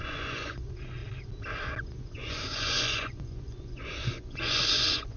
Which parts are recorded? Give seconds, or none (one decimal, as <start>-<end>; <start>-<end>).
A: 1.0-1.8